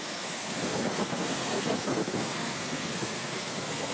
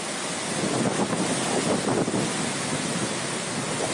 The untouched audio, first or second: second